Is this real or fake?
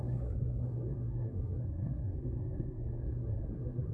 fake